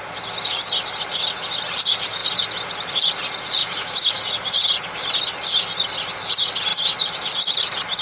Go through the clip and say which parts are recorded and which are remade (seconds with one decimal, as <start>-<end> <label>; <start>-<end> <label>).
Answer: 0.0-3.6 recorded; 3.6-4.3 remade; 4.3-8.0 recorded